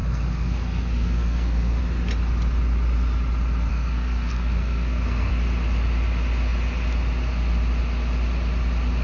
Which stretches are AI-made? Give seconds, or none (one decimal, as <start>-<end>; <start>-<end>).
0.0-1.8; 3.7-5.3